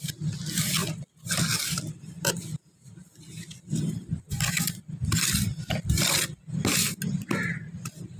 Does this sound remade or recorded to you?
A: recorded